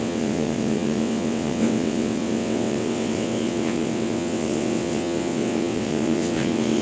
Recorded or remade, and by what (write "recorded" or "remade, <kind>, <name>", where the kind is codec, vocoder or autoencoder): remade, vocoder, WaveNeXt